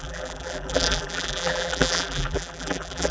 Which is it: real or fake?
fake